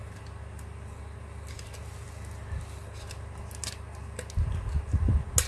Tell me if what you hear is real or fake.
real